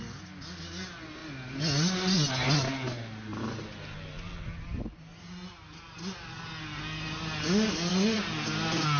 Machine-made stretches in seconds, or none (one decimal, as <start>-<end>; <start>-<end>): none